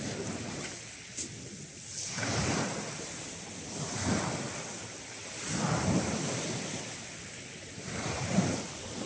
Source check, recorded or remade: recorded